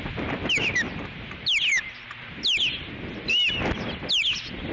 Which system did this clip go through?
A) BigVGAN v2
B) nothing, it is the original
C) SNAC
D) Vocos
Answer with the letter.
A